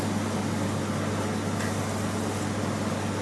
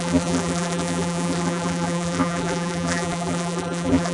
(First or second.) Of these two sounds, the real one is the first